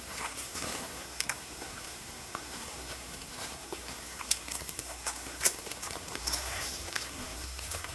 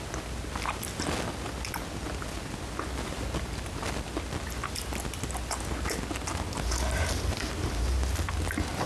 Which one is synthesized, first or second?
first